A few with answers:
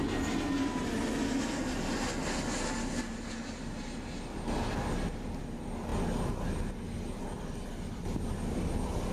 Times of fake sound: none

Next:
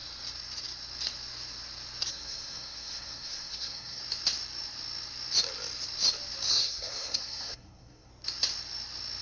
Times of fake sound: 2.1-4.0 (codec, SNAC); 6.5-8.1

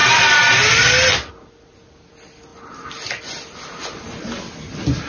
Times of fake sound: none

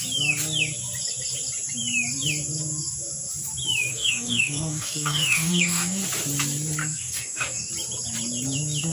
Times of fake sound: 3.9-6.0 (codec, DAC); 6.8-7.7

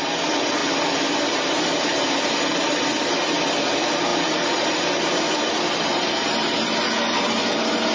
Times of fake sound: 1.9-2.8 (vocoder, BigVGAN v2); 4.1-5.5; 5.9-6.6

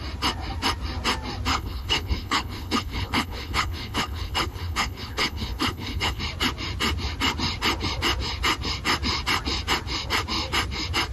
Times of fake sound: 1.5-6.2 (codec, HILCodec)